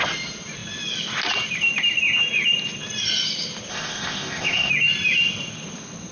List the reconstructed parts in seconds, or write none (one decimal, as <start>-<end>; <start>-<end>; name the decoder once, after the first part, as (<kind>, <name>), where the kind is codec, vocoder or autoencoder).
3.7-4.7 (codec, ZipCodec)